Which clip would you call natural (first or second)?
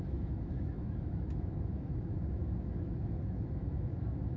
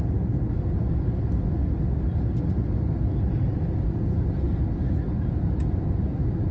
second